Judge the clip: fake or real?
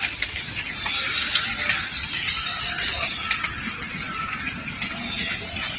real